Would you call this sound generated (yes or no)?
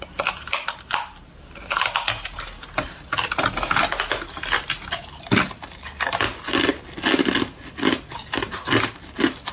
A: no